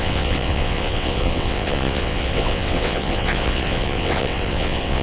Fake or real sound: fake